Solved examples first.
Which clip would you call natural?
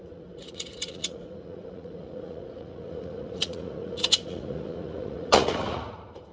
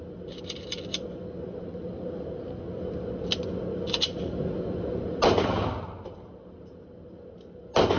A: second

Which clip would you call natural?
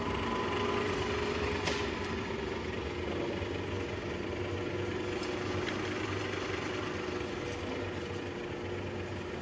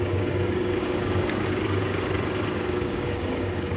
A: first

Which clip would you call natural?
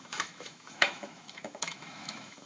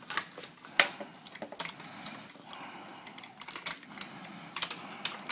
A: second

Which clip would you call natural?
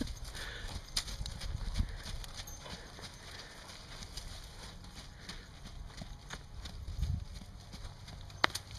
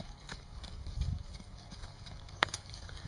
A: first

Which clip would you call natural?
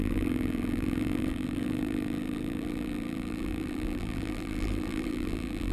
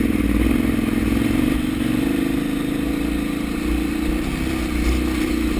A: second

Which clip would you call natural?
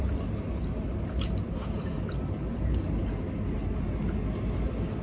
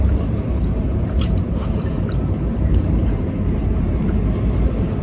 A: first